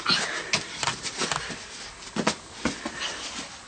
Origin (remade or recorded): recorded